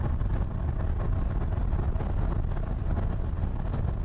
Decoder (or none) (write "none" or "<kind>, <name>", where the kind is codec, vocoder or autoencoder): none